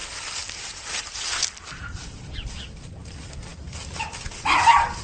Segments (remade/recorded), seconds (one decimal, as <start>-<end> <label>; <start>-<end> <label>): 0.0-5.0 recorded

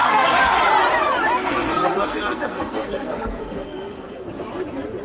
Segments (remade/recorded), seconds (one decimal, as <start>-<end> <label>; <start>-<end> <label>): 0.0-0.6 remade; 0.6-1.4 recorded; 1.4-4.3 remade; 4.3-5.0 recorded

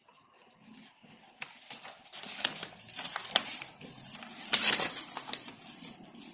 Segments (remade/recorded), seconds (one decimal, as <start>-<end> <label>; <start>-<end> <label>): 0.0-6.3 remade